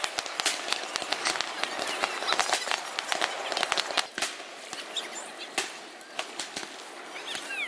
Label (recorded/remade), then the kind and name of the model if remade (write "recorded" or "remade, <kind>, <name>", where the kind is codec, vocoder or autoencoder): recorded